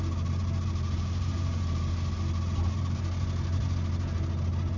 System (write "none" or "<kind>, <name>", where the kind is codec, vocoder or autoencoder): none